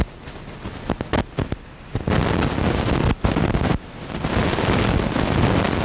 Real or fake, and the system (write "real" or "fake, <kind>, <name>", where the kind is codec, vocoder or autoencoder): real